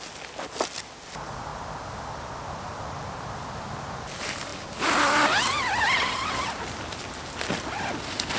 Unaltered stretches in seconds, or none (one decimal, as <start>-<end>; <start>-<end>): 0.0-8.4